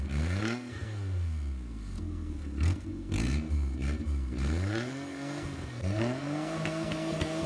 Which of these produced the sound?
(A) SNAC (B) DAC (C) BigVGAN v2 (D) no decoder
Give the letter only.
A